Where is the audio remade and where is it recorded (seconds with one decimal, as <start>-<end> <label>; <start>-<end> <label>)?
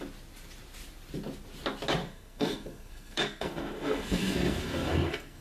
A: 0.0-2.0 recorded; 2.0-5.4 remade